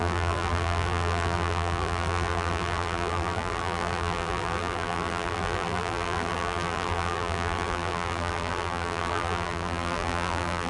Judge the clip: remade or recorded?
remade